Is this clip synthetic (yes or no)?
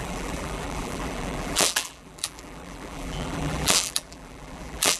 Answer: yes